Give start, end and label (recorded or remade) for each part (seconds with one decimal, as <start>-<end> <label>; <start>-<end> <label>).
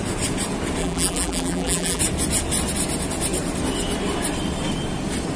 0.0-0.8 recorded; 0.8-2.0 remade; 2.0-5.4 recorded